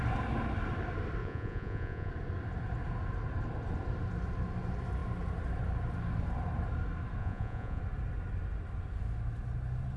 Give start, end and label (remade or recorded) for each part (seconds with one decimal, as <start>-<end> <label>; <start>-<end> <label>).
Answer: 0.0-1.2 recorded; 1.2-2.1 remade; 2.1-7.2 recorded; 7.2-7.8 remade; 7.8-10.0 recorded

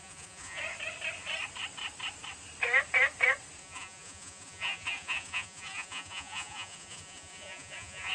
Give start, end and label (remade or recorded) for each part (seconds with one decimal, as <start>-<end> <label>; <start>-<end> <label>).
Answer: 0.0-0.6 remade; 0.6-3.6 recorded; 3.6-8.1 remade

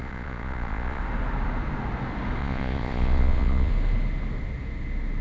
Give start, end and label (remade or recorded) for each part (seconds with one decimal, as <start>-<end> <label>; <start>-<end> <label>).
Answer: 0.0-1.0 remade; 1.0-2.4 recorded; 2.4-3.7 remade; 3.7-5.2 recorded

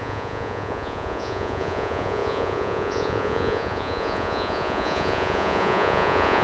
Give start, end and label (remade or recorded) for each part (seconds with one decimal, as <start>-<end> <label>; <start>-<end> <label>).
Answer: 0.0-6.4 remade